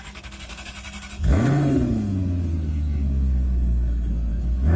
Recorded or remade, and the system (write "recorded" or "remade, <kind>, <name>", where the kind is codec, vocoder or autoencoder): remade, codec, SNAC